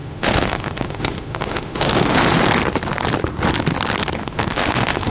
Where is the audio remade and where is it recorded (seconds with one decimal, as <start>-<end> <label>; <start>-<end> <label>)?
0.0-2.2 remade; 2.2-4.2 recorded; 4.2-5.1 remade